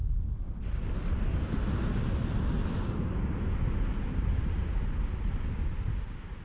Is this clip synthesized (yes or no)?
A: no